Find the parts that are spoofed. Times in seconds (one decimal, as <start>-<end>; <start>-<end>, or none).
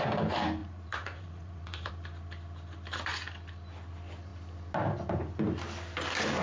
0.6-1.9